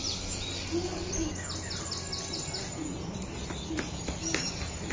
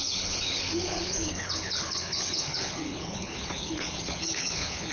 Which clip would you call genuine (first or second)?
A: first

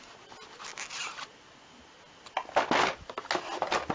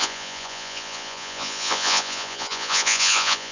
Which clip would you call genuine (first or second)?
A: first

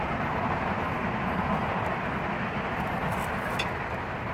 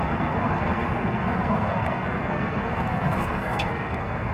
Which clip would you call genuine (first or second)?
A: first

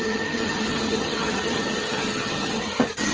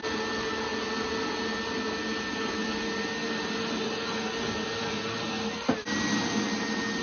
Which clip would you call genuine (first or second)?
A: second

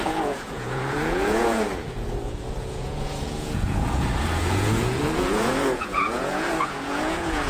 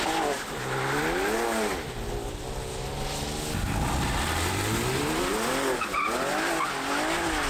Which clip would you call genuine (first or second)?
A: second